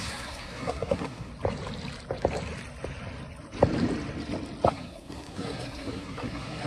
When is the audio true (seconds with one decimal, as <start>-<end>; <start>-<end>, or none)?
1.3-4.7